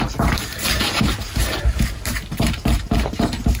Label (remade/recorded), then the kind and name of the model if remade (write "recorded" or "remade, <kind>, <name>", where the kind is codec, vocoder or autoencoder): remade, vocoder, BigVGAN v2